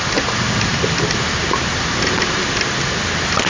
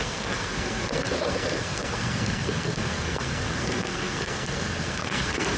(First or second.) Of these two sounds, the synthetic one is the second